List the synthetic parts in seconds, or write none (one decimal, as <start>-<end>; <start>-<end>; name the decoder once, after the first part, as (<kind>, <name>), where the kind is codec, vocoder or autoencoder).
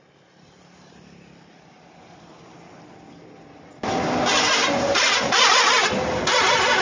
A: none